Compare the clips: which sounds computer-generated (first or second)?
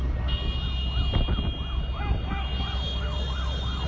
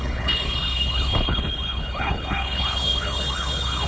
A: second